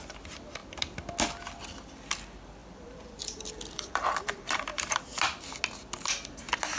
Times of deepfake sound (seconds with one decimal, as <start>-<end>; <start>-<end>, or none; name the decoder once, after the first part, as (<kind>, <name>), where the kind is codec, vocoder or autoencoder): 2.6-4.8 (vocoder, BigVGAN v2)